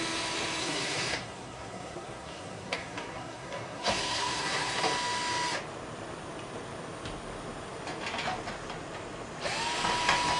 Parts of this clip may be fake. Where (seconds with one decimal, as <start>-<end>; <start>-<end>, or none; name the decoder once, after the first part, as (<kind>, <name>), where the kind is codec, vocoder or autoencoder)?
0.6-4.8 (codec, SNAC)